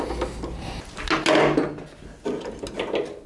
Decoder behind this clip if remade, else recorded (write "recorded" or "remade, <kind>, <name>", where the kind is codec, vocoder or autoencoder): recorded